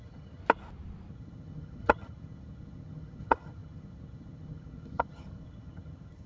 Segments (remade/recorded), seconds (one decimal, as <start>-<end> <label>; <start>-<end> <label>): 0.0-0.4 remade; 0.4-1.1 recorded; 1.1-6.3 remade